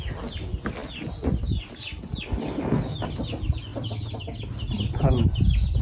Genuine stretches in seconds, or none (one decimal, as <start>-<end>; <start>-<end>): 0.0-5.8